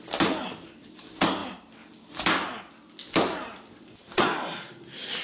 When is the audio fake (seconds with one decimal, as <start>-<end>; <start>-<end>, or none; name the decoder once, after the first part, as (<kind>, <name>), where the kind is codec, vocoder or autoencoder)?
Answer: none